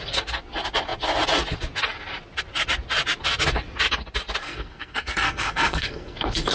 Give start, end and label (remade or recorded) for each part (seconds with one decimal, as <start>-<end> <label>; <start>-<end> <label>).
0.0-4.4 recorded; 4.4-6.5 remade